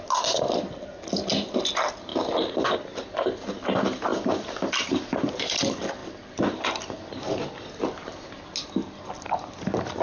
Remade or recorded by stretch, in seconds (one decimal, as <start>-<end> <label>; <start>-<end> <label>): 0.0-4.1 recorded; 4.1-5.3 remade; 5.3-6.0 recorded; 6.0-7.5 remade; 7.5-10.0 recorded